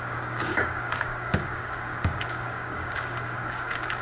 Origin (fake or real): fake